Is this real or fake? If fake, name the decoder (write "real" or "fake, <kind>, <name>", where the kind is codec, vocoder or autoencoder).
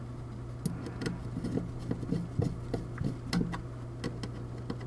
real